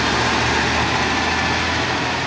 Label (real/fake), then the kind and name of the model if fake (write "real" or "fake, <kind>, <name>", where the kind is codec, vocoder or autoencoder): real